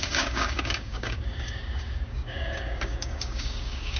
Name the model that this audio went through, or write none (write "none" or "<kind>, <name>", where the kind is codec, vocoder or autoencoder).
codec, DAC